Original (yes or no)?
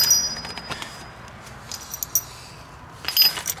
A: yes